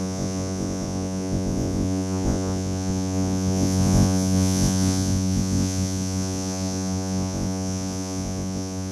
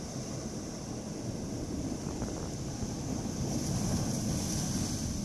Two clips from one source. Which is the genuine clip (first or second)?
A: second